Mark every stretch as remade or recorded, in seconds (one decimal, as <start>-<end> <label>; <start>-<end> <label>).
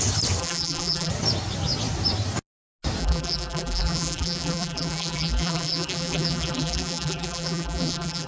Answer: 0.0-0.4 recorded; 0.4-1.1 remade; 1.1-3.0 recorded; 3.0-8.3 remade